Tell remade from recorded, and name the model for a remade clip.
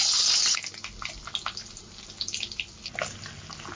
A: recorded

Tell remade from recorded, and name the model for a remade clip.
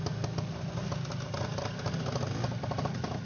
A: recorded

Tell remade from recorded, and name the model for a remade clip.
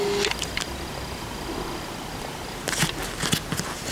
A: recorded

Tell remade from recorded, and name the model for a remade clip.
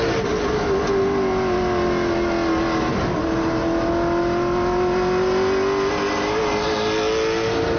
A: recorded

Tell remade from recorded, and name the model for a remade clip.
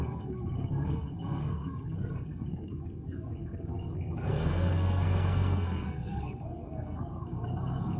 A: remade, codec, SNAC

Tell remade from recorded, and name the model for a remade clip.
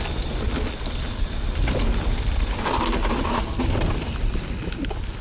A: recorded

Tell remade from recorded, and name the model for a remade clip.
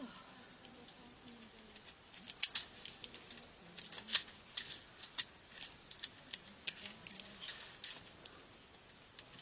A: recorded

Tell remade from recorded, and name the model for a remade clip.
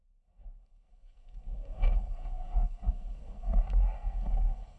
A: remade, codec, SNAC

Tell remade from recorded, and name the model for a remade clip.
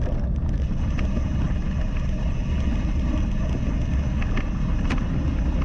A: recorded